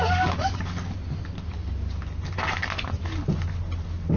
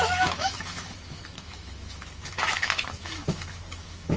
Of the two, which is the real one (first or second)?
first